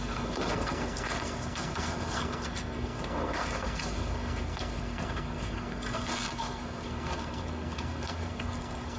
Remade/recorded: remade